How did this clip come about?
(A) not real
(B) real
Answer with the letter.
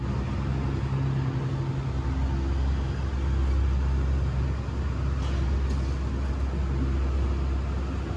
B